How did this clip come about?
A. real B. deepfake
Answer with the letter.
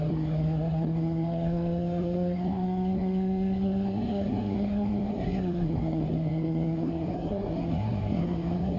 B